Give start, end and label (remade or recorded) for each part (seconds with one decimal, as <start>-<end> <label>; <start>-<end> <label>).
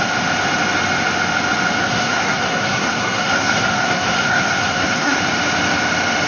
0.0-1.8 recorded; 1.8-5.2 remade; 5.2-6.3 recorded